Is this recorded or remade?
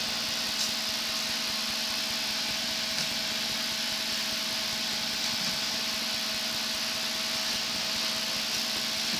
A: recorded